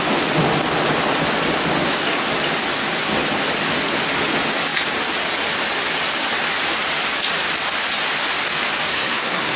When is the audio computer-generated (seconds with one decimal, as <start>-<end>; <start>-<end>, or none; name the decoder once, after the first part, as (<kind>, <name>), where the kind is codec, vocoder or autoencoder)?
8.9-9.6 (codec, SNAC)